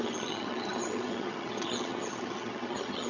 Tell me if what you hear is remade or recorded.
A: remade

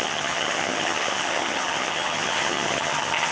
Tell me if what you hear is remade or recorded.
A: remade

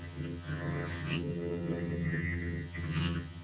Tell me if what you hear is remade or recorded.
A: remade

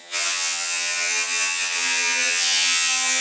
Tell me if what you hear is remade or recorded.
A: remade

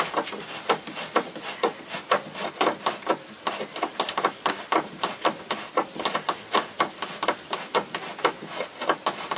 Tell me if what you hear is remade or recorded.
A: recorded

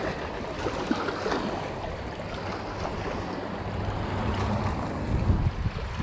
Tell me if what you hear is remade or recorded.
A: recorded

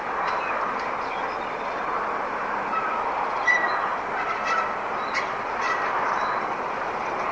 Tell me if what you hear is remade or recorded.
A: recorded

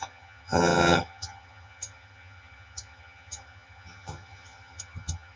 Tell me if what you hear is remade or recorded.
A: remade